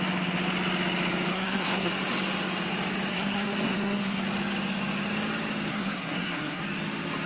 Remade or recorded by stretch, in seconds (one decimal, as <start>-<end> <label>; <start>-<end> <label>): 0.0-1.3 recorded; 1.3-1.9 remade; 1.9-3.1 recorded; 3.1-4.2 remade; 4.2-5.7 recorded; 5.7-6.6 remade; 6.6-7.3 recorded